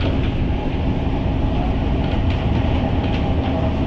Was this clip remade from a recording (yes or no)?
no